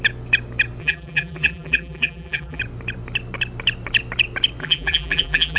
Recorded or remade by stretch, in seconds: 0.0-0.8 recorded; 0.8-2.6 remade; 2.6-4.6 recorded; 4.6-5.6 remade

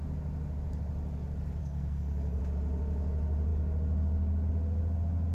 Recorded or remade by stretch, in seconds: 0.0-1.6 recorded; 1.6-2.4 remade; 2.4-5.3 recorded

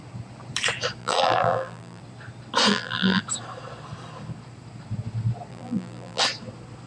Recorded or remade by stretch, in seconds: 0.0-1.0 recorded; 1.0-2.0 remade; 2.0-2.7 recorded; 2.7-3.2 remade; 3.2-5.5 recorded; 5.5-6.2 remade; 6.2-6.9 recorded

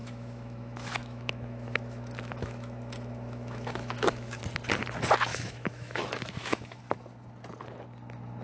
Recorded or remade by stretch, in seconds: 0.0-4.4 remade; 4.4-5.3 recorded; 5.3-6.8 remade; 6.8-8.4 recorded

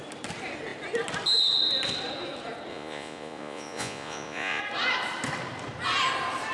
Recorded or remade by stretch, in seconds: 0.0-2.7 recorded; 2.7-4.6 remade; 4.6-6.5 recorded

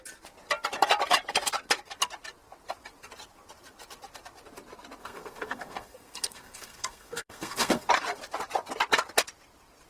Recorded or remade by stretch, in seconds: 0.0-5.0 recorded; 5.0-7.9 remade; 7.9-9.9 recorded

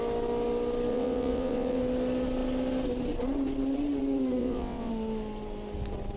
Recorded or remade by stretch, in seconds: 0.0-0.9 recorded; 0.9-1.8 remade; 1.8-4.4 recorded; 4.4-4.9 remade; 4.9-6.2 recorded

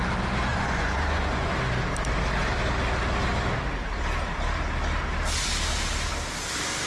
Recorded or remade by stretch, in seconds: 0.0-0.5 recorded; 0.5-1.5 remade; 1.5-6.9 recorded